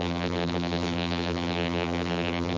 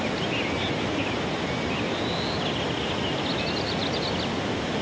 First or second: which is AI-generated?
first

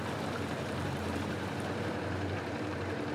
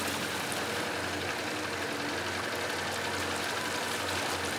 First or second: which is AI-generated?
first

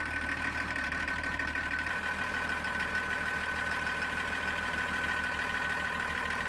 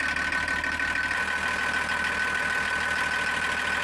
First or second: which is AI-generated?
first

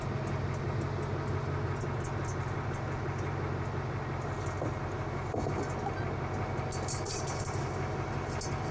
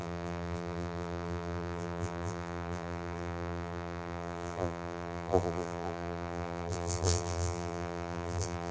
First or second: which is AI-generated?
second